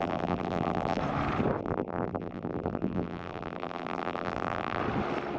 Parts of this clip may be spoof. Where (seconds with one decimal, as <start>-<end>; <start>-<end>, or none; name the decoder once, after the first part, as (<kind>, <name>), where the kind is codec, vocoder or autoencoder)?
0.0-1.0 (vocoder, BigVGAN v2); 1.6-4.8

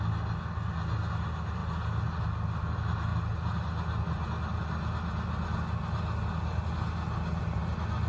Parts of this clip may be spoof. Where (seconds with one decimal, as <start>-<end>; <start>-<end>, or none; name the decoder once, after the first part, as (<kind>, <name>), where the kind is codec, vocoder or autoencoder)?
none